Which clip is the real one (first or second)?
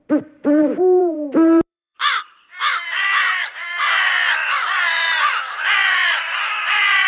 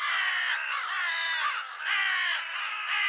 second